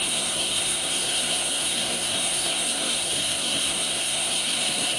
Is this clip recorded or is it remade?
remade